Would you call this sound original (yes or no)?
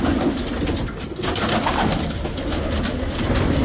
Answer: yes